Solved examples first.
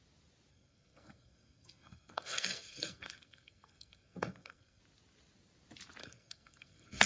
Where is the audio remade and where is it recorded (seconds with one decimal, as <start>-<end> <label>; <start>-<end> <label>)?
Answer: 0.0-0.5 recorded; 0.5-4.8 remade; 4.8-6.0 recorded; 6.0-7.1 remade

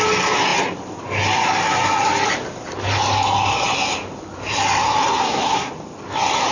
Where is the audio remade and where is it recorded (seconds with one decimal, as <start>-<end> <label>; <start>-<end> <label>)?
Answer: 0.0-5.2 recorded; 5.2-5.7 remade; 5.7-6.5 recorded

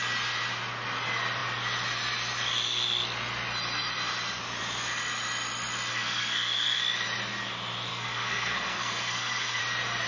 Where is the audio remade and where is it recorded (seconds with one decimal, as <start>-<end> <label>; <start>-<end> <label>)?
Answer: 0.0-5.9 recorded; 5.9-6.8 remade; 6.8-7.9 recorded; 7.9-9.6 remade; 9.6-10.1 recorded

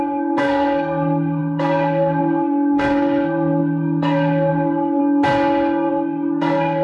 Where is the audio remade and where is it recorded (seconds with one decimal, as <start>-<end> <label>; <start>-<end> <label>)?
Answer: 0.0-5.0 remade; 5.0-5.9 recorded; 5.9-6.8 remade

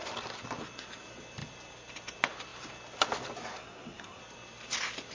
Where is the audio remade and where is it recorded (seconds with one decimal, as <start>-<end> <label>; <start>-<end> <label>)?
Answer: 0.0-3.5 recorded; 3.5-4.2 remade; 4.2-5.1 recorded